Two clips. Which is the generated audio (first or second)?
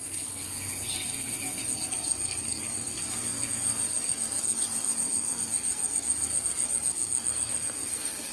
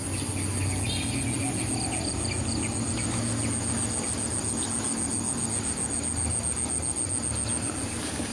first